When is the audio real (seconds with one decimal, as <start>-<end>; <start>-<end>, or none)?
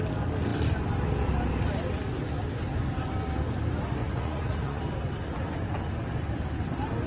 0.0-4.0; 4.8-7.1